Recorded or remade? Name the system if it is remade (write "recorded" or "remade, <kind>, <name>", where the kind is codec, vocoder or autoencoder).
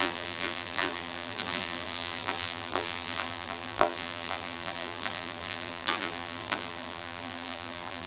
remade, vocoder, BigVGAN v2